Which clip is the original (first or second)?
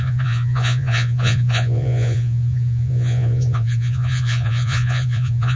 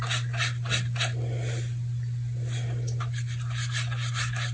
second